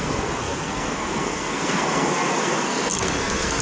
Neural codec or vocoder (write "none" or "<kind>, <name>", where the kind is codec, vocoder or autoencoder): codec, SNAC